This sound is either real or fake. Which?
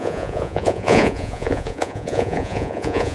fake